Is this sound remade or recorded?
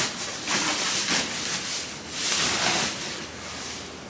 recorded